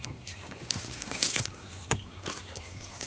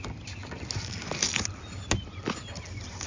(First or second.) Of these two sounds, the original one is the second